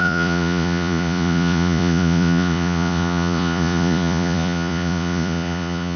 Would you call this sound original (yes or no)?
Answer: no